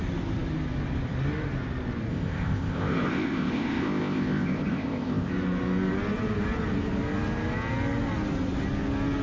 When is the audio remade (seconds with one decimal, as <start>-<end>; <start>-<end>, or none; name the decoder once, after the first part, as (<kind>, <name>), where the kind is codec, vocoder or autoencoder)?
2.1-5.3 (codec, ZipCodec)